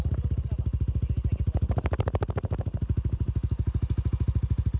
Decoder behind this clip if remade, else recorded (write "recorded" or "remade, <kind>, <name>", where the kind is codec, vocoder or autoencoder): recorded